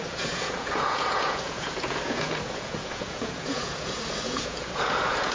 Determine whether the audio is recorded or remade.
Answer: remade